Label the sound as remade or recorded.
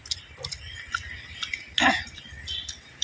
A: recorded